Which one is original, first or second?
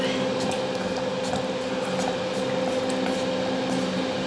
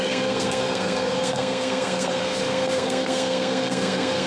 first